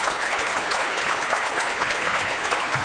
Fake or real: fake